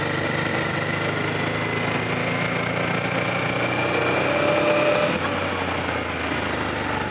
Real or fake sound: real